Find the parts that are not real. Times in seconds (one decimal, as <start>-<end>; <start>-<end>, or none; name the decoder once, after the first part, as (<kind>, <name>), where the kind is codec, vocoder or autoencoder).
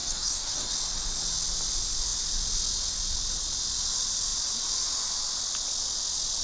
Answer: 0.0-0.7 (codec, DAC)